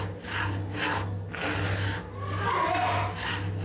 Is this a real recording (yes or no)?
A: yes